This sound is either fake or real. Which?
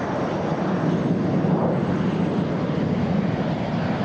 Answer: real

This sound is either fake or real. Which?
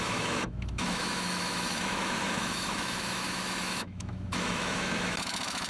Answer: fake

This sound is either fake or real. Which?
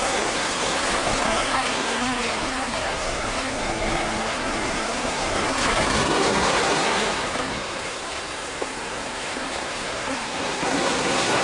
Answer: fake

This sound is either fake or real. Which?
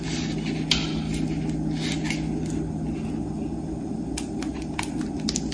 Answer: real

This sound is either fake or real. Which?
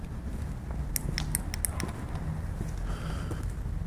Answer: real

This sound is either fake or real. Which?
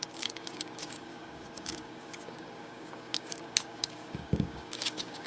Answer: fake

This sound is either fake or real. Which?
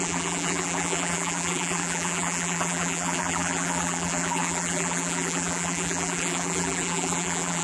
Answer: fake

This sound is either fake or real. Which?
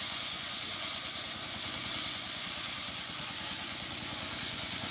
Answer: fake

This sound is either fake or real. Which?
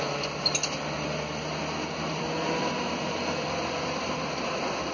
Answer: real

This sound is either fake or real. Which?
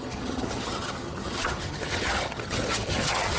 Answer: fake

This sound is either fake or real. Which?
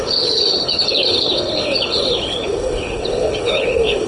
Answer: fake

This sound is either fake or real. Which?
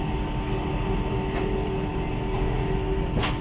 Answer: real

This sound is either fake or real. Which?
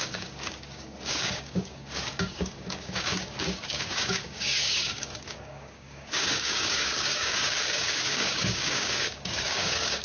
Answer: fake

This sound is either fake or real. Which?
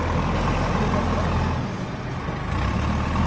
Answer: real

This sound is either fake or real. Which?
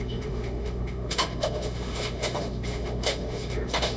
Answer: fake